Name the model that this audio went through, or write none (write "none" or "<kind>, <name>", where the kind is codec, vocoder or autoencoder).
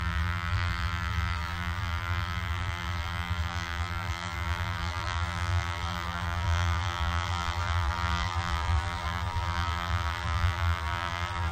vocoder, BigVGAN v2